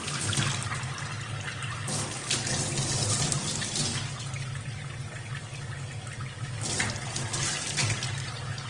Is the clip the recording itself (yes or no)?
yes